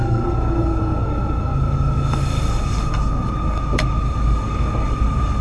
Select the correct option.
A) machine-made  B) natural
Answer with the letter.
A